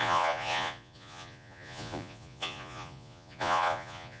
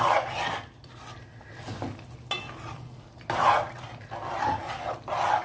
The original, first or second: second